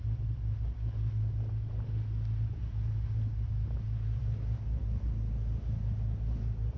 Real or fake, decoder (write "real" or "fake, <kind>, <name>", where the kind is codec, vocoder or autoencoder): real